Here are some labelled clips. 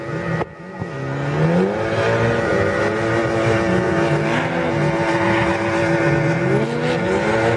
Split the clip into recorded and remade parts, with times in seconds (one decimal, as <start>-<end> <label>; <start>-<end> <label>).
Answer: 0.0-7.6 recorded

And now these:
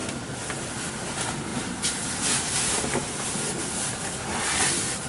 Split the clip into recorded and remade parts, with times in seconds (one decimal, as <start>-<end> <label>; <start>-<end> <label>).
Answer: 0.0-5.1 recorded

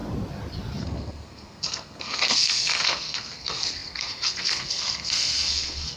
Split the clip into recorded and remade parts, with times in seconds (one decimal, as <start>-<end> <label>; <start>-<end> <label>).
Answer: 0.0-0.8 recorded; 0.8-6.0 remade

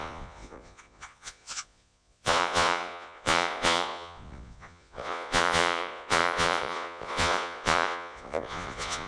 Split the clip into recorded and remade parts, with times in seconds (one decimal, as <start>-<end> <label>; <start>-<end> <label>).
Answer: 0.0-9.1 remade